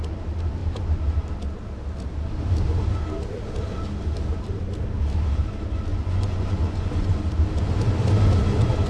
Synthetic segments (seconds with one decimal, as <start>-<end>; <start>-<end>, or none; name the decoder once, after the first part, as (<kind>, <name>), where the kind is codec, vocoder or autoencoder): 5.9-7.2 (vocoder, Vocos)